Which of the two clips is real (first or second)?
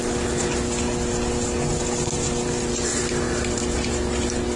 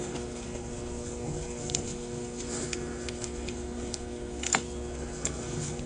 first